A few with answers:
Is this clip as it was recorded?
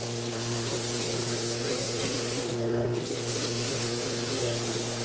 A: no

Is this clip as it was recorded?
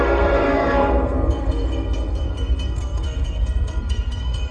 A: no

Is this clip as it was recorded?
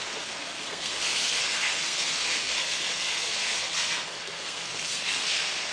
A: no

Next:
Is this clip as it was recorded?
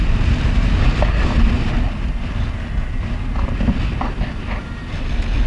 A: yes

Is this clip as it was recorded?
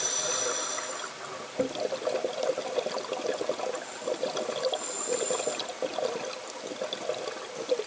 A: yes